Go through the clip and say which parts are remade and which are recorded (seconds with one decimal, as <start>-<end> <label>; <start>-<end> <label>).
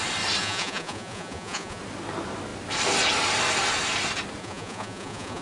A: 0.0-0.4 recorded; 0.4-1.8 remade; 1.8-4.4 recorded; 4.4-5.4 remade